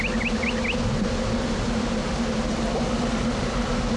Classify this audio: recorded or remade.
recorded